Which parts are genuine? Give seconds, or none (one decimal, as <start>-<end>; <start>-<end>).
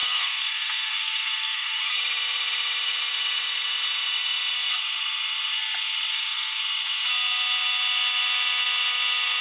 1.8-6.1; 6.6-9.4